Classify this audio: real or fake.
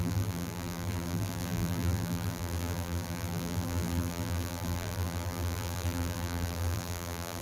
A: fake